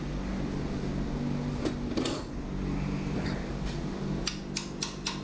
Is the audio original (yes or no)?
yes